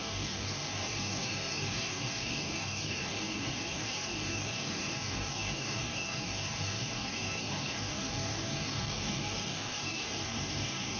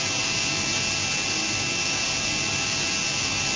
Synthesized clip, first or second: first